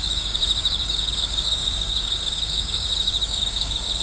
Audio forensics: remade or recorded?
remade